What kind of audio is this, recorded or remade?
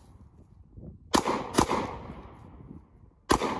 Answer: recorded